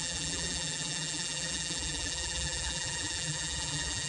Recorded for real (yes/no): no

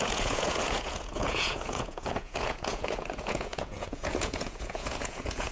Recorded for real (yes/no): no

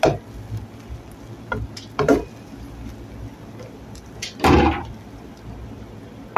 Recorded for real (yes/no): yes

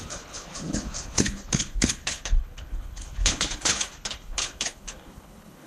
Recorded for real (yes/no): no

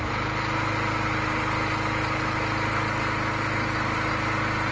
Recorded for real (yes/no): yes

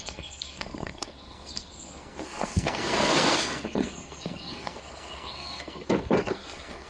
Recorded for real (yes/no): no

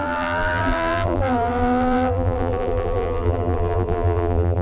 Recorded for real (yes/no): no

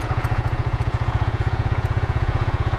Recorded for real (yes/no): no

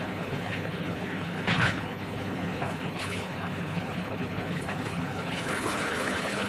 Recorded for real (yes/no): no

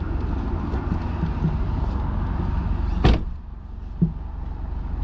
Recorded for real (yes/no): yes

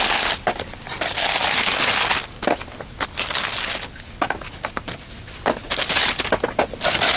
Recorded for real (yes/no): yes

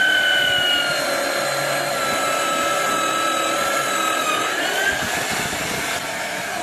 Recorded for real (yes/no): yes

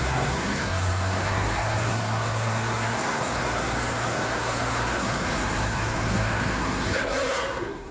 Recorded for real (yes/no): no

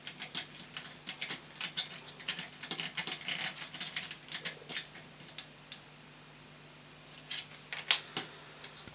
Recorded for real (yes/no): yes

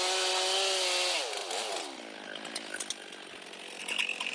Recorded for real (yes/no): yes